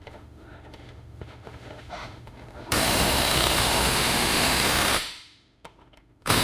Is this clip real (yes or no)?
no